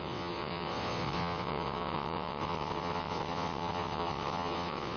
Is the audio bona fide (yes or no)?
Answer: no